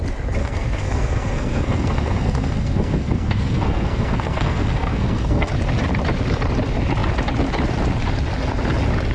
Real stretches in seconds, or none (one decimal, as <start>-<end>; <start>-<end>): 0.0-0.4; 5.5-9.1